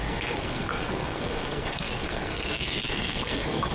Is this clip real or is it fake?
fake